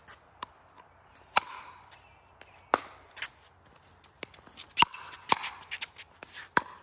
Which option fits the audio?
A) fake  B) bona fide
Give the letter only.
B